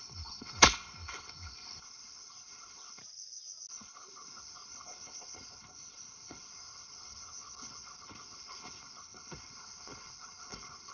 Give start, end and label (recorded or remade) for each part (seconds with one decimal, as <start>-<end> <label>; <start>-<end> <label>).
0.0-3.0 remade; 3.0-3.7 recorded; 3.7-10.9 remade